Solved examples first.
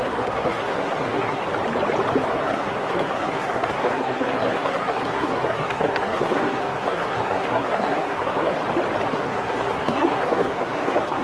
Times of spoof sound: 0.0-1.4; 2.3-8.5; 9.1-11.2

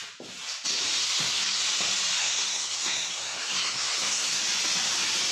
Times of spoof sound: 1.0-1.6; 2.2-4.4